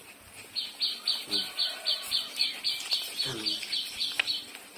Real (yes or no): yes